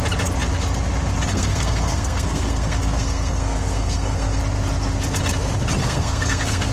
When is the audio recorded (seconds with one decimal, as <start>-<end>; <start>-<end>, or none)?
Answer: 0.0-1.3; 4.4-5.8

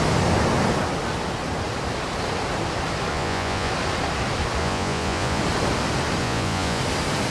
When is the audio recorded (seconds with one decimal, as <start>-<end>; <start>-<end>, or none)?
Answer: 0.0-3.1; 3.7-4.6; 5.4-6.2; 6.8-7.3

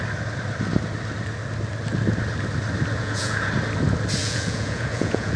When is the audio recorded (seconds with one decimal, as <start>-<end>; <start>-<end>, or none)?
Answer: 0.0-2.9; 3.5-4.2

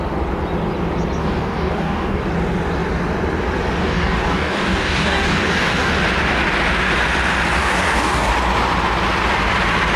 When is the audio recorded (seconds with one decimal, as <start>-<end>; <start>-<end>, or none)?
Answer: 0.0-1.2; 2.2-3.8; 5.9-7.6; 8.3-10.0